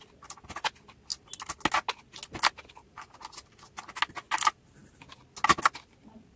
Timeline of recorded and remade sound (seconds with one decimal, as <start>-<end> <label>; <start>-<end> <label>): 0.0-6.4 recorded